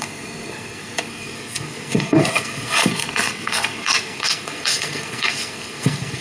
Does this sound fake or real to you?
fake